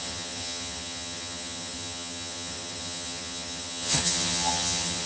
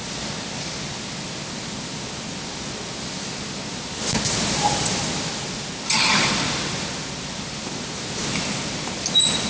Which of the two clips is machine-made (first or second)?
first